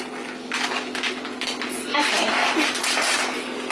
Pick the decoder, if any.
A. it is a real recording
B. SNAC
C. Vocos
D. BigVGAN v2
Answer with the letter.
A